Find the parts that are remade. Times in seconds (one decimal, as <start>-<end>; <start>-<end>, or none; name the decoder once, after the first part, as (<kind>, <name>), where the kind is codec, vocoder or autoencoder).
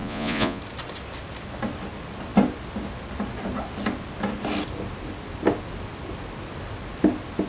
0.0-0.6 (vocoder, Vocos)